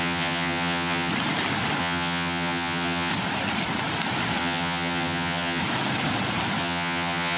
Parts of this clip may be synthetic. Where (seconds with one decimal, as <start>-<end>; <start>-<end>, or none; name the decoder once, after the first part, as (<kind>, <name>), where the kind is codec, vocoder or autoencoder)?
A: 0.0-1.1 (vocoder, HiFi-GAN); 1.8-3.1; 4.4-5.6; 6.6-7.4